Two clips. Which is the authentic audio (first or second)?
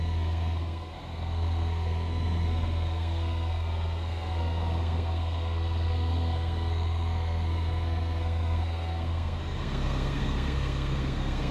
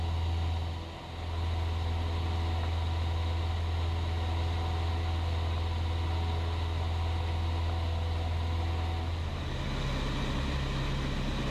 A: second